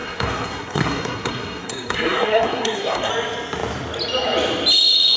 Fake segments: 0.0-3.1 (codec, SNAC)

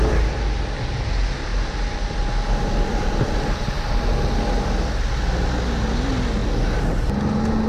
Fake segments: none

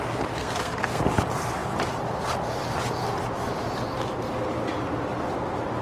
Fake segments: 0.4-1.0 (codec, SNAC)

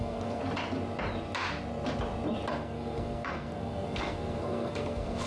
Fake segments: 0.0-0.4 (codec, SNAC); 2.5-5.3

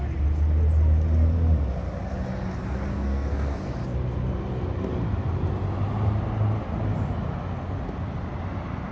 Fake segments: 2.9-3.7 (codec, SNAC)

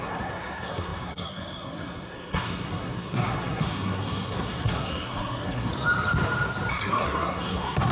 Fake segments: 0.0-5.7 (codec, SNAC); 6.7-7.9